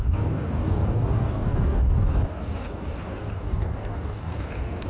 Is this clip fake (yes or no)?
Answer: yes